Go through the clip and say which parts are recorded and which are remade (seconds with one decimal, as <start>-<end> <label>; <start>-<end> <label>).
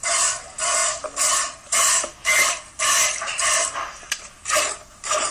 0.0-5.3 recorded